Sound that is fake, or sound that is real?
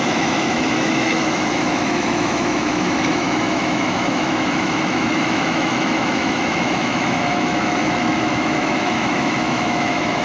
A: fake